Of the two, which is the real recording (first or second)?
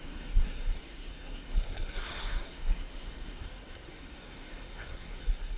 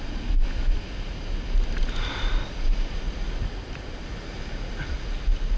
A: second